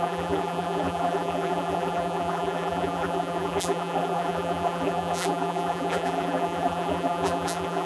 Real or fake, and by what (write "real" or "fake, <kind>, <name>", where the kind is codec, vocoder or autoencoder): fake, vocoder, BigVGAN v2